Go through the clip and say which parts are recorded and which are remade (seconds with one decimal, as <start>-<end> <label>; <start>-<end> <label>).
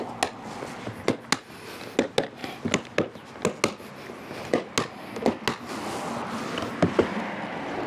0.0-7.9 recorded